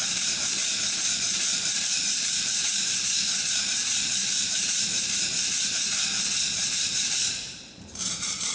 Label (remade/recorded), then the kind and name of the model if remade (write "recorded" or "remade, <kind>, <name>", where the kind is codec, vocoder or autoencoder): remade, vocoder, BigVGAN v2